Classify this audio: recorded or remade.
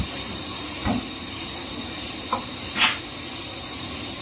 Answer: remade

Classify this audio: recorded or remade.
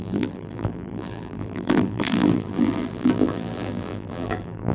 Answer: remade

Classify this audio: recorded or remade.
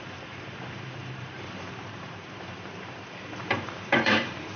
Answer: remade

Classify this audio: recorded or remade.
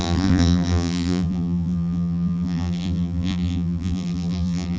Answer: remade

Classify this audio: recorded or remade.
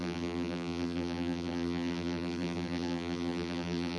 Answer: remade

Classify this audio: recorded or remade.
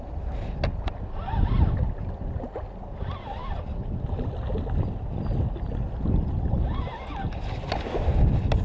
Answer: recorded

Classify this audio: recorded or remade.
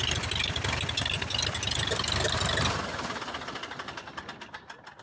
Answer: recorded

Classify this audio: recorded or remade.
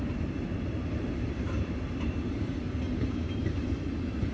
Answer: remade